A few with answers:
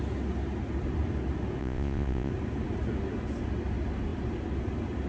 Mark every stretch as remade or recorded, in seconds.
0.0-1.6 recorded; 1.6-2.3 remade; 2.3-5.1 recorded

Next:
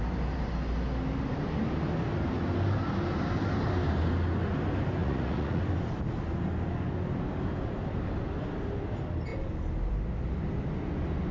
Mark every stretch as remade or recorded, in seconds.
0.0-5.0 recorded; 5.0-5.6 remade; 5.6-11.3 recorded

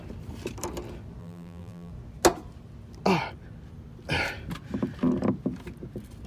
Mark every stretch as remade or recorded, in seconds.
0.0-1.2 recorded; 1.2-1.9 remade; 1.9-6.3 recorded

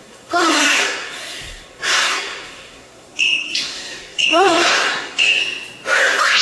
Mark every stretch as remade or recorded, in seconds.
0.0-5.4 remade; 5.4-6.0 recorded; 6.0-6.4 remade